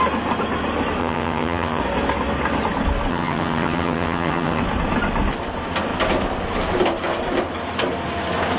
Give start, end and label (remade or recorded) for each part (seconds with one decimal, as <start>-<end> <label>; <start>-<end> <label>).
0.0-1.0 recorded; 1.0-1.8 remade; 1.8-3.1 recorded; 3.1-4.6 remade; 4.6-8.6 recorded